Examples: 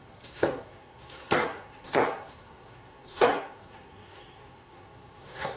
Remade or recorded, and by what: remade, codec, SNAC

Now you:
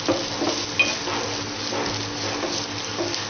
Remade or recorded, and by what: recorded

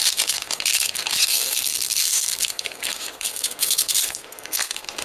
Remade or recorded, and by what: remade, codec, SNAC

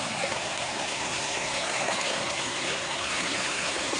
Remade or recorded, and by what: remade, codec, SNAC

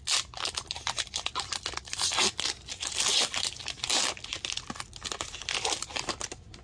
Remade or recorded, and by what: recorded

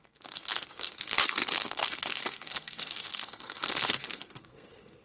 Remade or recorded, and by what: remade, codec, SNAC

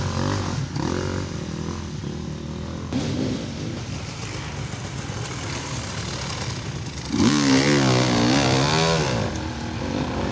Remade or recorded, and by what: recorded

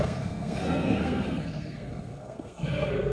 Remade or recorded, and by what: remade, codec, SNAC